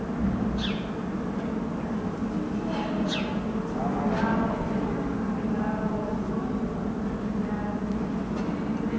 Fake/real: real